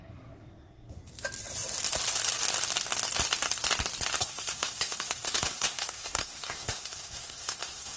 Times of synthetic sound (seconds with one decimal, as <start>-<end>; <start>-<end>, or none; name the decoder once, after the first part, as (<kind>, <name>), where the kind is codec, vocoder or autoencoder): 0.0-1.0 (codec, SNAC); 4.2-8.0